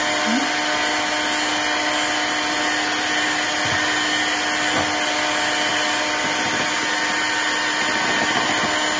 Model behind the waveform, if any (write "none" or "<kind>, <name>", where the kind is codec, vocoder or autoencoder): none